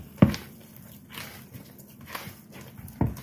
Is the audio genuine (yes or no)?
yes